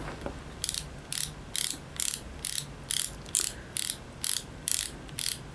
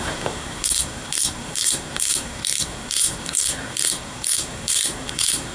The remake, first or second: second